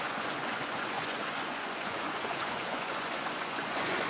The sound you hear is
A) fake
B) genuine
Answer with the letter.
A